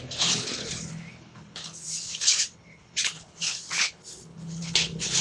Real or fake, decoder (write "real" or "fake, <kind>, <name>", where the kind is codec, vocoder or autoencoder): fake, codec, HILCodec